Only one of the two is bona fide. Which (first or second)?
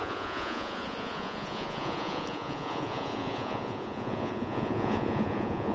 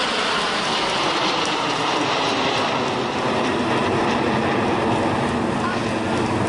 second